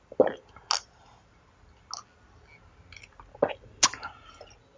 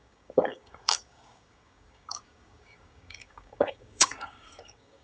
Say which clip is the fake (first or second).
second